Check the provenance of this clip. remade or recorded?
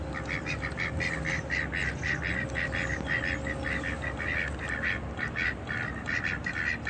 recorded